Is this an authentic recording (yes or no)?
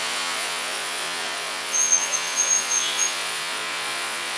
no